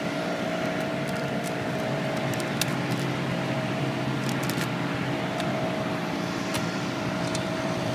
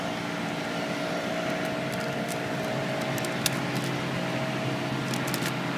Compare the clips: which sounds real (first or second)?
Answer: second